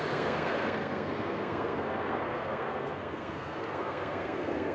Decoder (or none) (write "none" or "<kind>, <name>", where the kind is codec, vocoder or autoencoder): codec, SNAC